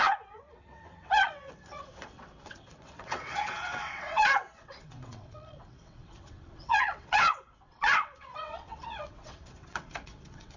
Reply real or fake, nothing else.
fake